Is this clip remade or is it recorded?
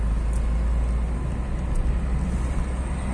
recorded